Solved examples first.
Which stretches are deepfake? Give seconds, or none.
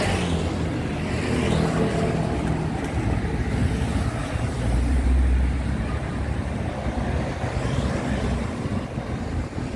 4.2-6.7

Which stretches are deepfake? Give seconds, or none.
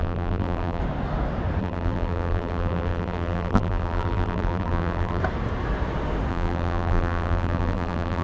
0.0-0.8; 1.6-5.2; 6.3-8.2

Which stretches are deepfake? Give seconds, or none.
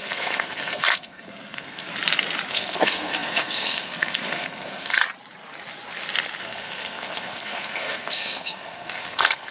0.0-1.9; 2.5-5.0; 6.4-9.5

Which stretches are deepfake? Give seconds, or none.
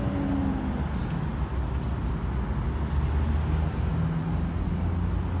none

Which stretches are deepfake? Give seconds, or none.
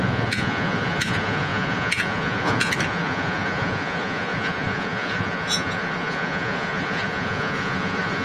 0.0-8.2